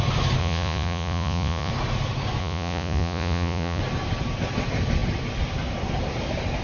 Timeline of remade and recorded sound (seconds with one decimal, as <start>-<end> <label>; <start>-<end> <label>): 0.0-0.4 recorded; 0.4-1.7 remade; 1.7-2.4 recorded; 2.4-3.8 remade; 3.8-6.6 recorded